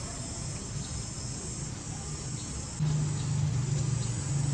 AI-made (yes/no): no